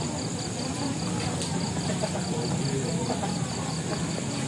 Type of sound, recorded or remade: recorded